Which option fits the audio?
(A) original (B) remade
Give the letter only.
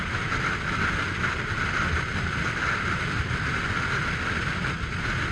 A